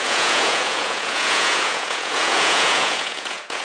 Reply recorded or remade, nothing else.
remade